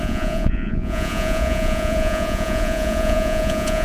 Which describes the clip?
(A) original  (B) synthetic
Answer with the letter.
B